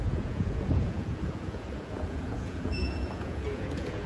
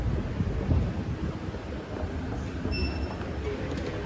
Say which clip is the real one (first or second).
second